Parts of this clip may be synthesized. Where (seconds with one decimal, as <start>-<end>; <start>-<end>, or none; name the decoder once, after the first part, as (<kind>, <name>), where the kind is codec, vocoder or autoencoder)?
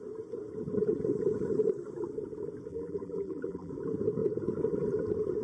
2.7-3.7 (vocoder, BigVGAN v2)